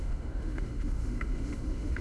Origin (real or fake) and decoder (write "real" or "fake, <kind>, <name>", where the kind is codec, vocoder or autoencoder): fake, autoencoder, DAC-VAE